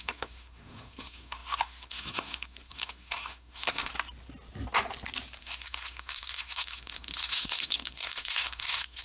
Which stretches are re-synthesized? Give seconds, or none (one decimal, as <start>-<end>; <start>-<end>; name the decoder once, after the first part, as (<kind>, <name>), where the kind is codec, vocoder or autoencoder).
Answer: 0.0-3.9 (codec, SNAC); 5.4-9.0